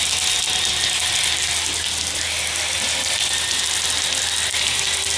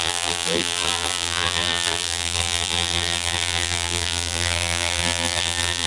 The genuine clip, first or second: first